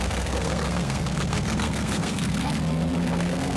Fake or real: fake